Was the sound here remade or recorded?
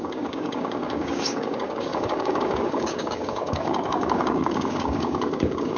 remade